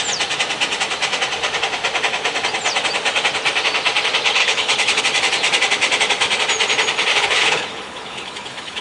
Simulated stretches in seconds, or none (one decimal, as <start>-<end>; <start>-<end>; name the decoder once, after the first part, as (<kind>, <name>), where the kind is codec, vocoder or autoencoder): 4.4-5.0 (codec, HILCodec); 7.1-8.8